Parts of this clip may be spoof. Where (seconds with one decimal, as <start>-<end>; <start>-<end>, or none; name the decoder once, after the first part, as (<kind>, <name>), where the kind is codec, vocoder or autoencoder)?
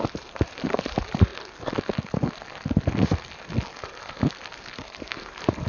0.0-1.3 (vocoder, BigVGAN v2); 4.7-5.7